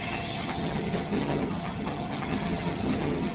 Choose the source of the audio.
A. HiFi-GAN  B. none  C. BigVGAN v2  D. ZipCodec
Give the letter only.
A